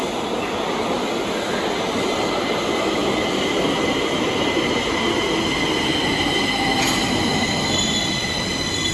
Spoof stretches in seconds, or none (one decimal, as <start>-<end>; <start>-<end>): none